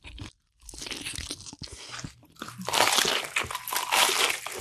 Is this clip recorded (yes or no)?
yes